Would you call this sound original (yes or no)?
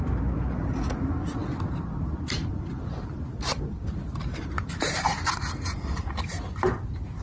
yes